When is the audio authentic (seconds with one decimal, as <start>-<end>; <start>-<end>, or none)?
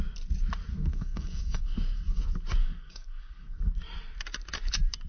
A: 0.0-0.7; 2.2-2.6; 3.6-5.1